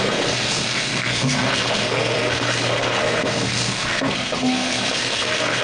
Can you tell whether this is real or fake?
fake